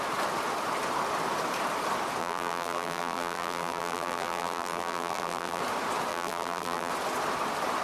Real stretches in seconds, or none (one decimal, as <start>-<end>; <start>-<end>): 0.0-2.2; 5.6-6.1; 6.9-7.8